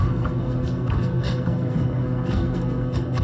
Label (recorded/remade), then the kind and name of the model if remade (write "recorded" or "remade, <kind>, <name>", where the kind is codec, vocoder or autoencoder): remade, codec, SNAC